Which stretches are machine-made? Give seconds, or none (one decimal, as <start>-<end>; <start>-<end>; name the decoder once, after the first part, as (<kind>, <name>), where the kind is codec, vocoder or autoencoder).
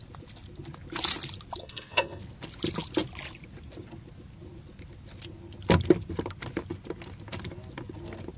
1.6-2.2 (codec, SNAC)